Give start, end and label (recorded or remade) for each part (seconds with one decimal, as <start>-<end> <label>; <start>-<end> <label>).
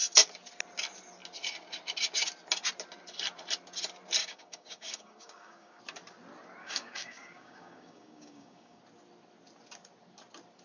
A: 0.0-4.2 recorded; 4.2-5.8 remade; 5.8-6.6 recorded; 6.6-8.8 remade; 8.8-10.6 recorded